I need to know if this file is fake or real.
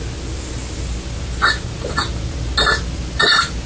real